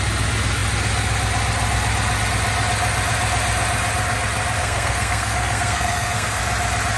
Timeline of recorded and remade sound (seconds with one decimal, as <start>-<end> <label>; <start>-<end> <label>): 0.0-4.6 recorded; 4.6-6.4 remade; 6.4-7.0 recorded